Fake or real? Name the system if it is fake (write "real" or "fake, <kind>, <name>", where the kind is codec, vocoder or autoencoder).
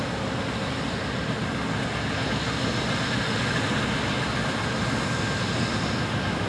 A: real